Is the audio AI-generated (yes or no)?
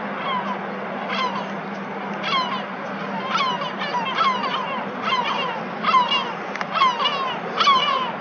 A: no